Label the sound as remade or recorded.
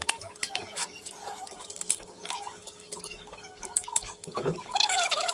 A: remade